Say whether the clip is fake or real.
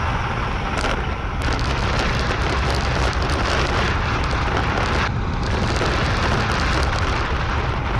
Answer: real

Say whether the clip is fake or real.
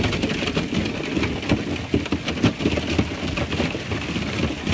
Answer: real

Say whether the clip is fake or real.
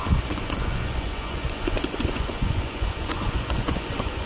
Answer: fake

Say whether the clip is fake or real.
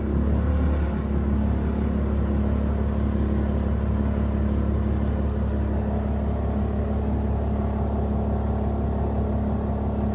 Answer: real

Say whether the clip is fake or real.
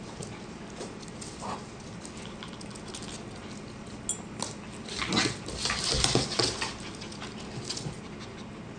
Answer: real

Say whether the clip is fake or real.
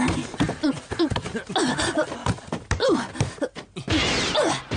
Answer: real